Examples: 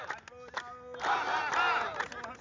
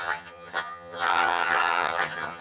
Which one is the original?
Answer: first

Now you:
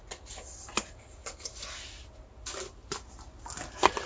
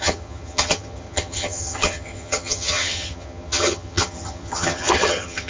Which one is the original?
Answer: first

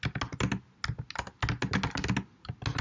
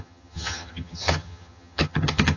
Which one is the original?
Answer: first